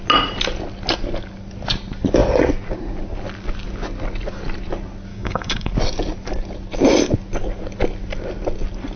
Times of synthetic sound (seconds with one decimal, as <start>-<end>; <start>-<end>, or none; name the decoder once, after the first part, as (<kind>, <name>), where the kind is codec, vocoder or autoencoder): 5.1-5.7 (codec, DAC)